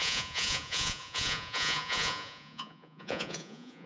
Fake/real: fake